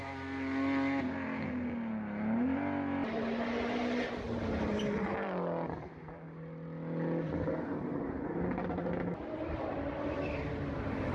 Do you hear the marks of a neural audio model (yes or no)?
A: no